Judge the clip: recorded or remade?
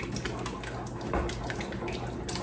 recorded